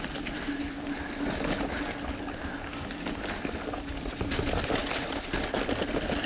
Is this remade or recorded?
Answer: recorded